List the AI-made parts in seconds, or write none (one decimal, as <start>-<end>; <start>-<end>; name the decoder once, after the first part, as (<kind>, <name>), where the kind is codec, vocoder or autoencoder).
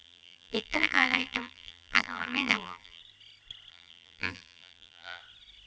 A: 0.0-3.0 (vocoder, BigVGAN v2); 3.7-5.2